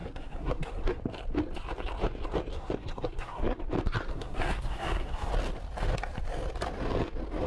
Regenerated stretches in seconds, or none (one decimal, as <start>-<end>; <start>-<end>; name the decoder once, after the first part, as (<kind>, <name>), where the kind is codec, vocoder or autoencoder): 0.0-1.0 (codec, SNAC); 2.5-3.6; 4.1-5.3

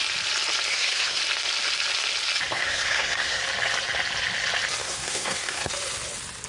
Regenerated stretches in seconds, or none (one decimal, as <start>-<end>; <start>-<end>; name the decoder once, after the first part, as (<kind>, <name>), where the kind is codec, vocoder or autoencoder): 0.7-1.2 (codec, SNAC); 2.5-3.4; 4.8-5.7

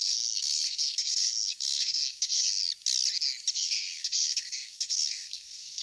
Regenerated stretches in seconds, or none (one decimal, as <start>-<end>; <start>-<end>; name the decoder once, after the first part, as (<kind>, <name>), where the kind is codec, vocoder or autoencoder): 0.0-2.6 (codec, SNAC); 3.5-5.8